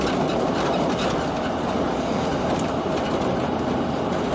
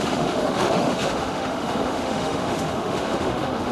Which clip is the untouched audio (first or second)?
first